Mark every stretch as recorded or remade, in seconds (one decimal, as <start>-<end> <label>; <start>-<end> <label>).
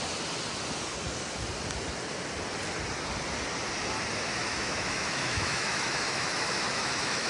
0.0-4.4 recorded; 4.4-7.3 remade